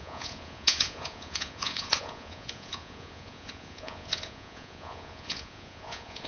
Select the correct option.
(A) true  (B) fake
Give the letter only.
B